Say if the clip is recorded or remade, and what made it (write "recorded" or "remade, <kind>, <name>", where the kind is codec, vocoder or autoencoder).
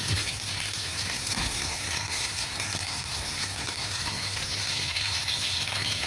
remade, codec, SNAC